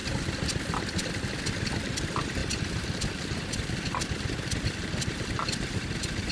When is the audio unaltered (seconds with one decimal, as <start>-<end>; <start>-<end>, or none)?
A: none